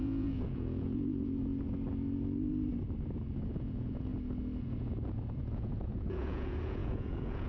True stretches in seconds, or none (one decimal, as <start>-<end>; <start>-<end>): 1.5-3.5; 4.1-4.6